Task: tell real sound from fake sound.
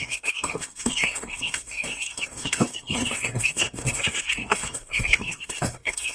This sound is fake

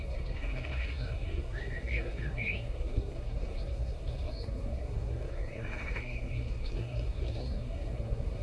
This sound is fake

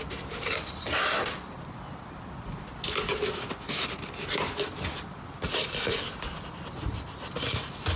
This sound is real